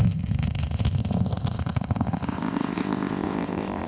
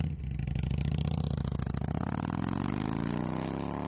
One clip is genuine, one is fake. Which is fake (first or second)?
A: first